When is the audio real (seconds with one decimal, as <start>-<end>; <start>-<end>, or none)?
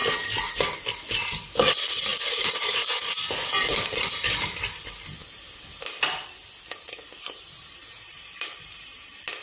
0.0-2.1; 3.1-3.7; 4.8-9.4